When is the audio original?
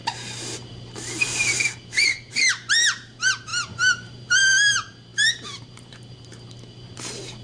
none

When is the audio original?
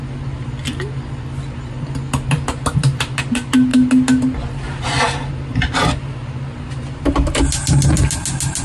0.0-8.6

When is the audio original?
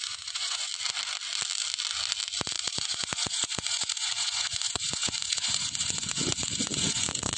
0.7-2.5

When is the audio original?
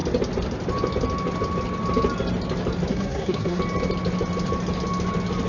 0.0-2.9; 3.6-5.5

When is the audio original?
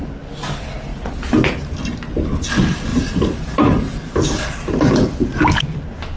0.0-2.9; 5.1-6.2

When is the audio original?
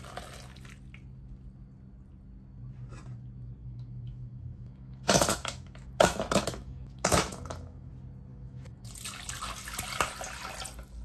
0.0-3.6; 7.9-8.3; 8.9-11.0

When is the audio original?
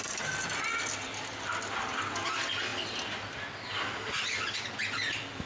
0.0-5.5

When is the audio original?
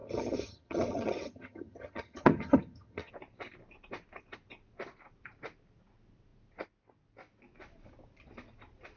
3.1-9.0